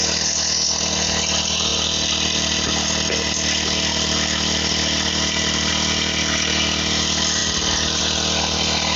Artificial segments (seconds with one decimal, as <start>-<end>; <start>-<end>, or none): none